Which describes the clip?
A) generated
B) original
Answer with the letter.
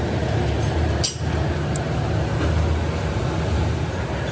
B